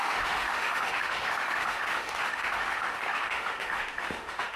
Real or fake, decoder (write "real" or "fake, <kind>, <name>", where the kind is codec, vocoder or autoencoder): fake, autoencoder, DAC-VAE